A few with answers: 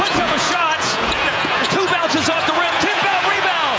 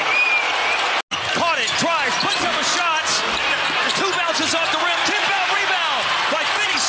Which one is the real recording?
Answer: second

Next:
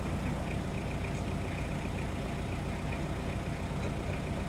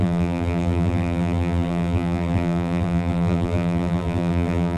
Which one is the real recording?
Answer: first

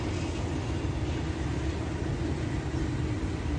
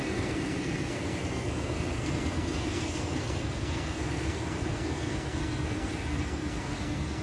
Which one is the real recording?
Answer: first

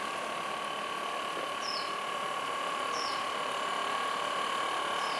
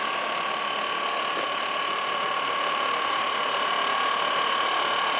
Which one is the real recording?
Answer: second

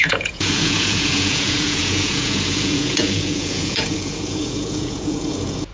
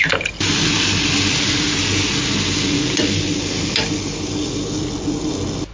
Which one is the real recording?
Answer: second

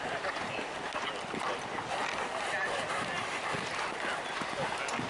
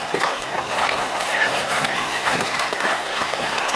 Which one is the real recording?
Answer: first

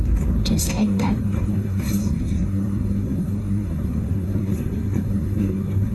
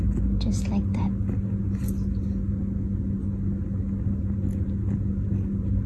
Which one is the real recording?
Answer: second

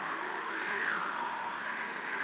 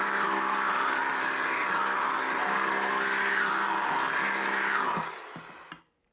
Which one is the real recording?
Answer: second